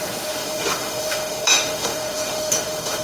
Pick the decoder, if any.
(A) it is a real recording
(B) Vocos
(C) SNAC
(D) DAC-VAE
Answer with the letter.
D